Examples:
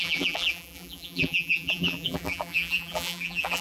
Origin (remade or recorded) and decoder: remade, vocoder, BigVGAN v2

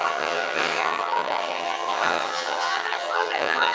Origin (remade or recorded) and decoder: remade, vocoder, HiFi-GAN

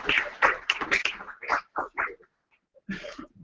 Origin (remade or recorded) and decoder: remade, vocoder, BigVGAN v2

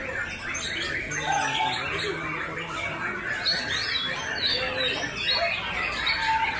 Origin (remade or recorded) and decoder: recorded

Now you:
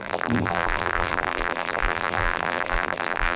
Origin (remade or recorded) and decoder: remade, vocoder, BigVGAN v2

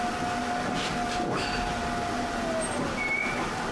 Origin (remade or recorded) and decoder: recorded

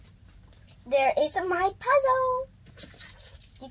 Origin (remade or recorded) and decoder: recorded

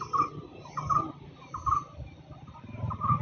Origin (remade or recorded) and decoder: recorded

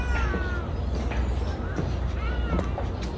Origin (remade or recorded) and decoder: recorded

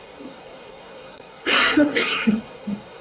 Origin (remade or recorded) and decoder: remade, codec, SNAC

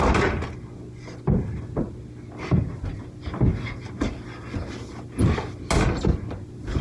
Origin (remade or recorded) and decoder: recorded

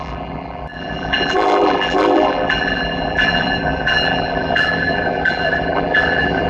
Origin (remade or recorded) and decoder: remade, vocoder, BigVGAN v2